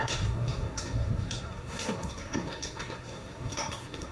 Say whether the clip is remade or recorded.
remade